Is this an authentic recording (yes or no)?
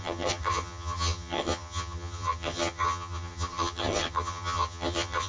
no